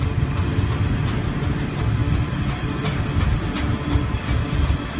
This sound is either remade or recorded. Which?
recorded